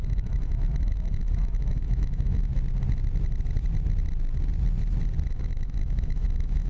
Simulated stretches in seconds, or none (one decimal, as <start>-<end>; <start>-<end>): 0.0-2.5; 5.3-6.7